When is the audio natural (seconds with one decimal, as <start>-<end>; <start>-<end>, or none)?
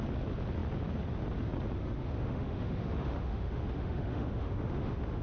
0.0-1.8